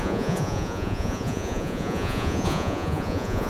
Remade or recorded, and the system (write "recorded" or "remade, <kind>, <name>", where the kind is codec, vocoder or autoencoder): remade, vocoder, Vocos